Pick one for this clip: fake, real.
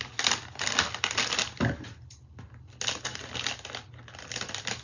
real